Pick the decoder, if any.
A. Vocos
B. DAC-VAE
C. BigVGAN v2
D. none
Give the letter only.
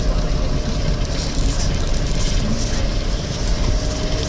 D